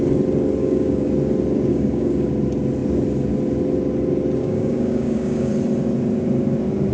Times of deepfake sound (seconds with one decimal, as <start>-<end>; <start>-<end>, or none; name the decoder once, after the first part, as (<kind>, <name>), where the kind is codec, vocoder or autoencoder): 0.6-1.1 (codec, DAC); 1.7-2.3; 4.4-5.5